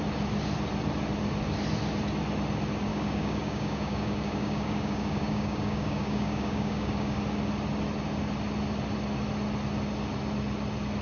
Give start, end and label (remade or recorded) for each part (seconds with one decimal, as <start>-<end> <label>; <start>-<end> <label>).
0.0-2.9 recorded; 2.9-7.2 remade; 7.2-11.0 recorded